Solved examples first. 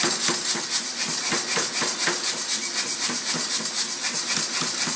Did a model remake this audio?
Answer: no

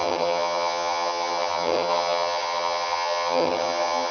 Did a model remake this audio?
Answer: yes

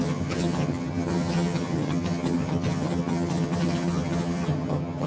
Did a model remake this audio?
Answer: yes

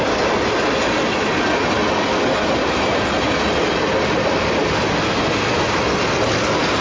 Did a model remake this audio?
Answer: no